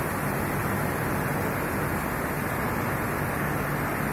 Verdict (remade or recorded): recorded